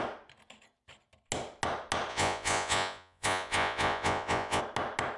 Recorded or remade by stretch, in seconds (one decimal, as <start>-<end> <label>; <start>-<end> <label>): 0.0-2.1 recorded; 2.1-4.6 remade; 4.6-5.2 recorded